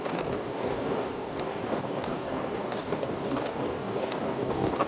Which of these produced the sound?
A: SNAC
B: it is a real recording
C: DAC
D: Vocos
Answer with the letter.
C